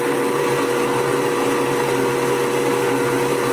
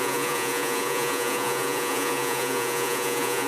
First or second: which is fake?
second